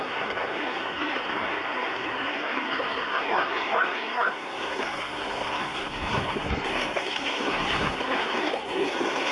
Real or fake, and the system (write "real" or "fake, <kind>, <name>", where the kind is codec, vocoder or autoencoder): fake, codec, SNAC